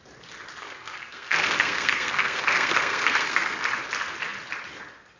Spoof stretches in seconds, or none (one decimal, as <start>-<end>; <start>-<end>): 0.6-3.7